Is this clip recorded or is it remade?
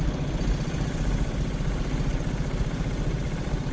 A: recorded